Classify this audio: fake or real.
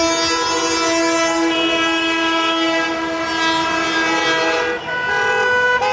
real